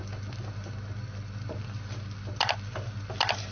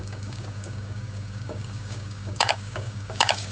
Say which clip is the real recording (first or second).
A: first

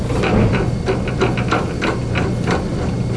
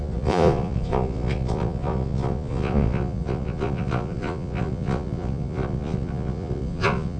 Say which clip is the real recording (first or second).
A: first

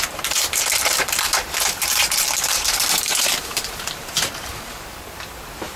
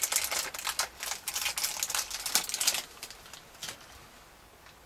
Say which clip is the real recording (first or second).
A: second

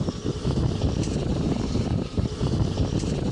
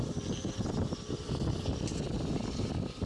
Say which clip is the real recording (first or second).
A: second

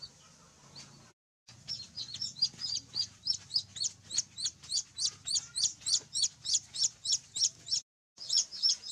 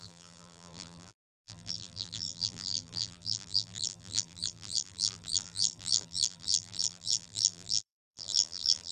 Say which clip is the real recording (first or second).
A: first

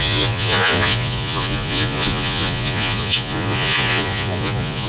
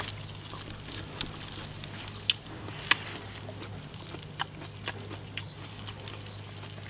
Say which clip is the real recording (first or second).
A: second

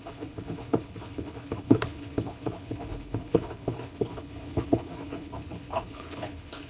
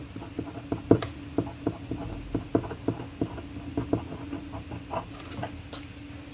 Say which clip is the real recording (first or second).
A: second